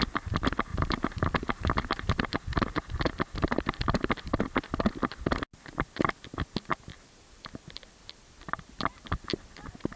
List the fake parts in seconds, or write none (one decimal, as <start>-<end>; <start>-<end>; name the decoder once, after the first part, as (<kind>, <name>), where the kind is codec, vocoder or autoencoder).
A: 0.7-2.2 (vocoder, BigVGAN v2); 6.9-9.5